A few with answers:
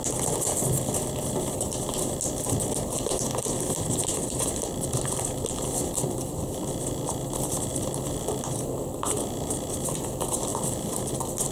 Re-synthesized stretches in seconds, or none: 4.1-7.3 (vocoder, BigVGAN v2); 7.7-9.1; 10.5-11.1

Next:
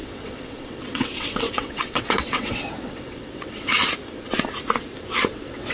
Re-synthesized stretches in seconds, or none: 0.0-3.7 (vocoder, WaveNeXt); 5.3-5.7

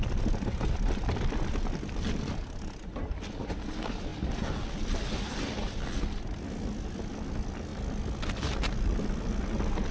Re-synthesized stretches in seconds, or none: none

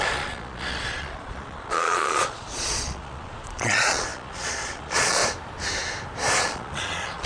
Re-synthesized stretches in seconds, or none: 0.0-5.2 (vocoder, Vocos); 6.4-7.3